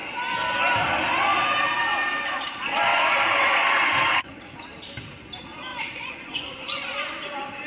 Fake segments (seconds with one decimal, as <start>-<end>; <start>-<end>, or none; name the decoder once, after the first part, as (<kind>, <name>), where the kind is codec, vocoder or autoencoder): 2.9-4.3 (vocoder, Vocos); 5.7-7.1